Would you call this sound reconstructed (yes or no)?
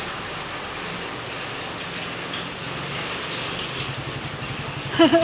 no